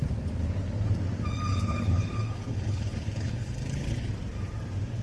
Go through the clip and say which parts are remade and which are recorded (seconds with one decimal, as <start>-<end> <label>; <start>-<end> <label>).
0.0-1.5 recorded; 1.5-4.1 remade; 4.1-5.0 recorded